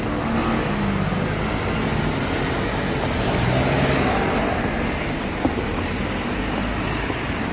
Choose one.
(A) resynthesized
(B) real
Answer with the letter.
B